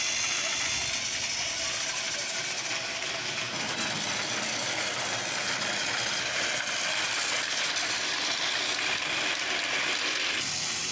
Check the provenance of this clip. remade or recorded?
recorded